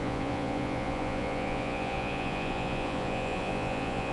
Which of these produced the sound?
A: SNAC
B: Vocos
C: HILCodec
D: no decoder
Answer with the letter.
B